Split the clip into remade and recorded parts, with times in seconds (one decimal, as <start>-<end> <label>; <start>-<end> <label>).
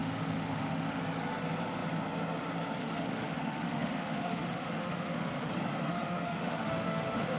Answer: 0.0-1.0 remade; 1.0-2.8 recorded; 2.8-5.5 remade; 5.5-5.9 recorded; 5.9-7.4 remade